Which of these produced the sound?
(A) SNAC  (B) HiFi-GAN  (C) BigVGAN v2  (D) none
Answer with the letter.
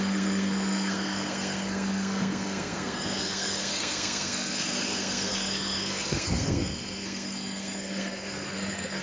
A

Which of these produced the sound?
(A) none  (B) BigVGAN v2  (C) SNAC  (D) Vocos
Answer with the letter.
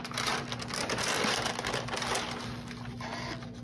A